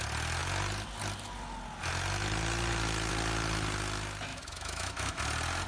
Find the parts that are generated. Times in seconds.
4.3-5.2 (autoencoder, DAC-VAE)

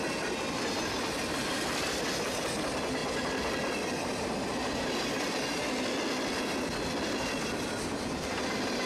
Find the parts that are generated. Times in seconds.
none

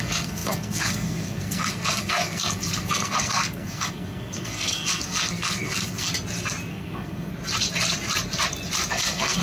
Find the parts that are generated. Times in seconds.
0.0-6.1 (codec, SNAC); 6.7-7.3; 8.9-9.4

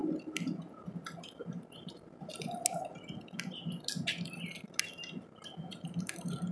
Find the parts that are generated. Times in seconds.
none